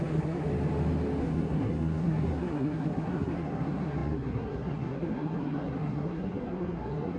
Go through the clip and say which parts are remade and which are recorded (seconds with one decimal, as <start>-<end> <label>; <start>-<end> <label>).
0.0-0.5 remade; 0.5-1.2 recorded; 1.2-7.2 remade